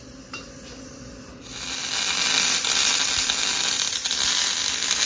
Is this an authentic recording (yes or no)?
yes